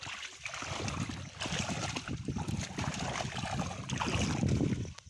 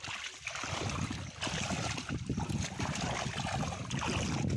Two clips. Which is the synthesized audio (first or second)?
first